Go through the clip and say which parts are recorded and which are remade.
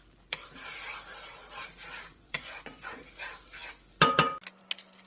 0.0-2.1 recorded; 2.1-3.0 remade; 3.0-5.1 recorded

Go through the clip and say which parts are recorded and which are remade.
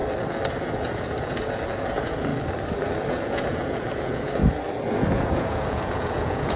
0.0-0.6 recorded; 0.6-2.3 remade; 2.3-3.1 recorded; 3.1-4.4 remade; 4.4-4.9 recorded; 4.9-6.6 remade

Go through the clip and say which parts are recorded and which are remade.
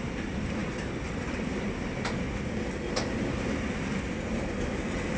0.0-5.2 recorded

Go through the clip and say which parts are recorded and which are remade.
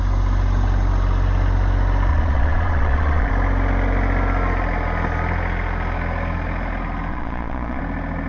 0.0-2.1 recorded; 2.1-3.3 remade; 3.3-7.1 recorded; 7.1-7.8 remade; 7.8-8.3 recorded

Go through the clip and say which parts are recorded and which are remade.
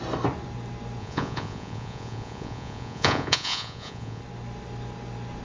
0.0-1.0 recorded; 1.0-4.2 remade; 4.2-5.4 recorded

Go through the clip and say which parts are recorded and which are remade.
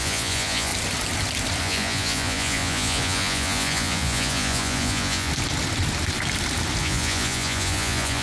0.0-0.7 remade; 0.7-1.6 recorded; 1.6-5.3 remade; 5.3-6.8 recorded; 6.8-8.2 remade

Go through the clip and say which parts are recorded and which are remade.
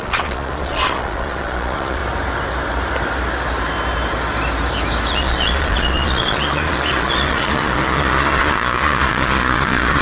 0.0-2.0 remade; 2.0-5.1 recorded; 5.1-10.0 remade